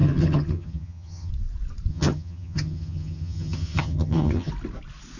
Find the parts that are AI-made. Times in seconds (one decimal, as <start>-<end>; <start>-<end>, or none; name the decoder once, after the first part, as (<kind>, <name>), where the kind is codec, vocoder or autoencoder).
0.0-1.3 (vocoder, HiFi-GAN); 1.9-4.5